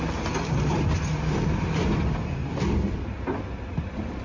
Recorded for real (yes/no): yes